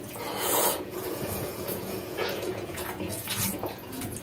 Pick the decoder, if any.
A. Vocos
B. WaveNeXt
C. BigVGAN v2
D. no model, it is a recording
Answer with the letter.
A